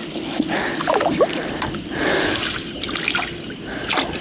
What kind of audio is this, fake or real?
real